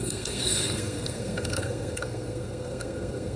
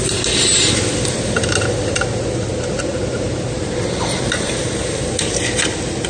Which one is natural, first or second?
second